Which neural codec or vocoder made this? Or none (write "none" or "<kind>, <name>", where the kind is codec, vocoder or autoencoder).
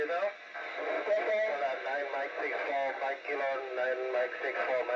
none